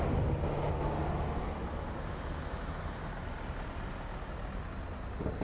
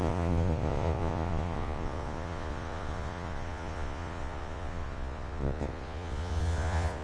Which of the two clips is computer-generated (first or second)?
second